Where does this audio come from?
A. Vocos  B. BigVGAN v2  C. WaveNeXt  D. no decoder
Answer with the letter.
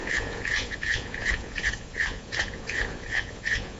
A